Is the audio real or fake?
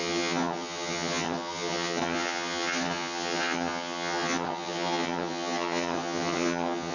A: fake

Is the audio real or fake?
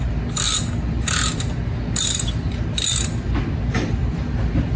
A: real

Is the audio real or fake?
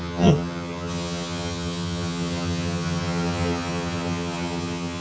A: fake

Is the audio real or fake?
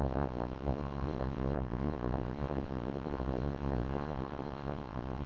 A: fake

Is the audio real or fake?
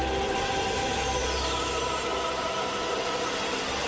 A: real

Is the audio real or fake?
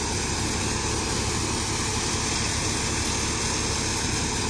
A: real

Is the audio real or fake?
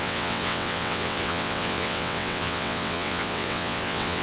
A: fake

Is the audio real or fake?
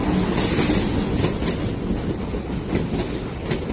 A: real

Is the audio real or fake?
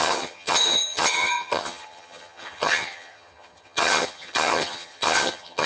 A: fake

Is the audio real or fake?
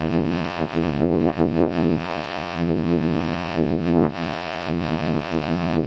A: fake